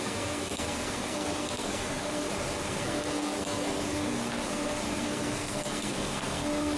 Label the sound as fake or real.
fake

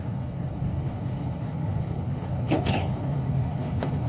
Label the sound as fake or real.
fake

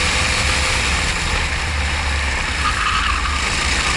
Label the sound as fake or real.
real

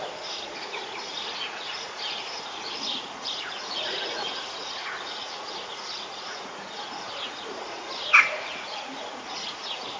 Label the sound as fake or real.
fake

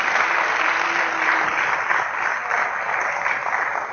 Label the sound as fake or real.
real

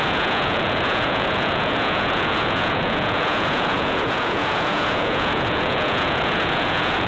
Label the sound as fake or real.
fake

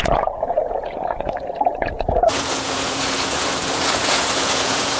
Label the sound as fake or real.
fake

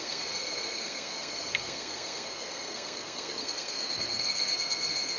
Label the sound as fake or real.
fake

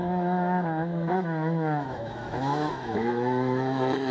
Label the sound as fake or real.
fake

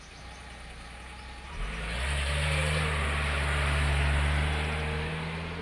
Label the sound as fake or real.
real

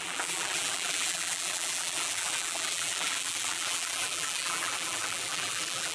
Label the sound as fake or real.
fake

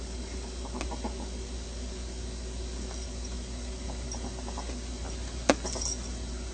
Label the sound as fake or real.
real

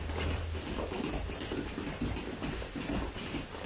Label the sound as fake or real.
real